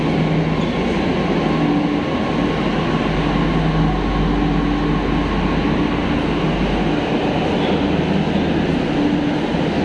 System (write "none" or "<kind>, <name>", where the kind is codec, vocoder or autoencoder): none